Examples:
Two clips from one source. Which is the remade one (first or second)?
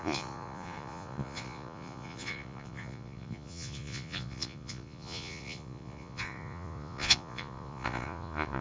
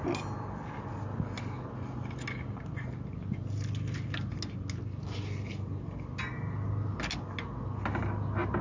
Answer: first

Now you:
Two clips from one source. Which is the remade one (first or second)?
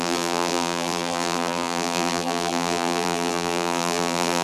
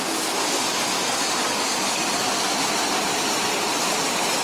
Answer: first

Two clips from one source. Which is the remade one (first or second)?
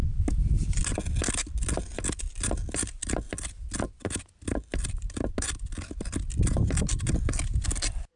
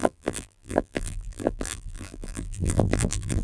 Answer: second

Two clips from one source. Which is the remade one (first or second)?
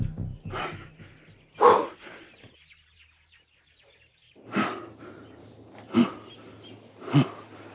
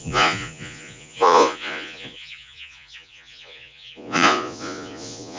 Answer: second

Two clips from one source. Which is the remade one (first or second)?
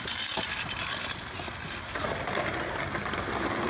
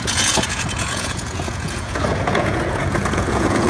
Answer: second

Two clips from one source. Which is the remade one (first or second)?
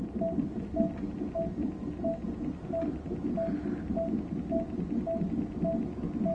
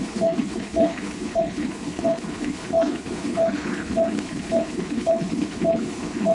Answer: second